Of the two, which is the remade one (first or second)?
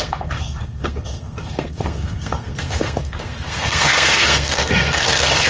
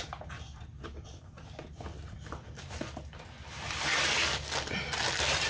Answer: first